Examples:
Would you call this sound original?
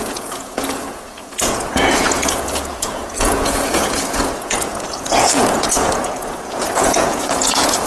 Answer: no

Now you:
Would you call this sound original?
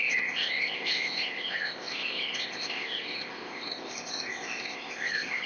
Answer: no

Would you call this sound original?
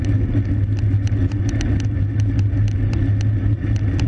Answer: yes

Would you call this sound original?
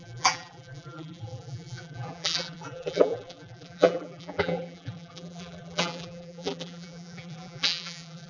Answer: no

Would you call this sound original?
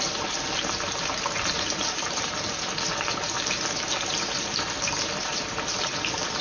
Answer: no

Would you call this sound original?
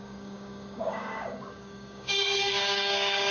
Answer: no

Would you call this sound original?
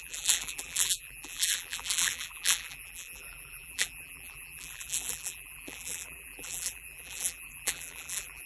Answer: no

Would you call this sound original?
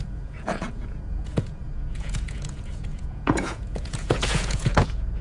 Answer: no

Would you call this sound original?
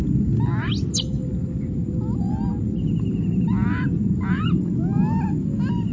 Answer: yes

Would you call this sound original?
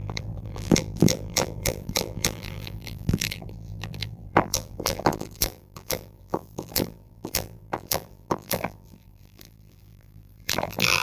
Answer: no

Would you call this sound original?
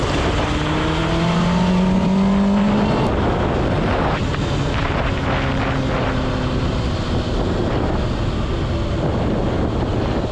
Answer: yes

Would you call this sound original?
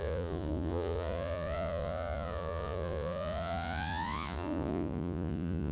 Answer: no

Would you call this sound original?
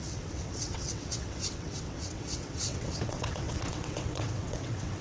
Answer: no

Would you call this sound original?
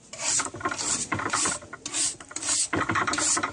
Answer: yes